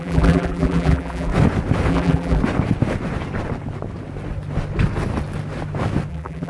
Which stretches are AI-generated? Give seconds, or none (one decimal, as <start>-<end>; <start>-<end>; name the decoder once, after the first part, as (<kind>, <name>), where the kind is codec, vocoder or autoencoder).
0.0-1.3 (vocoder, BigVGAN v2); 1.9-2.4; 6.1-6.5